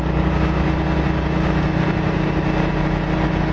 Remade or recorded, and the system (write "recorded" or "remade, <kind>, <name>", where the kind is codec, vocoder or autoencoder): recorded